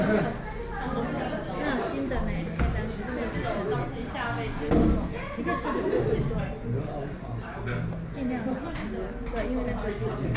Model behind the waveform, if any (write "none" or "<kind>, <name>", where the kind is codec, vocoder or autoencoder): none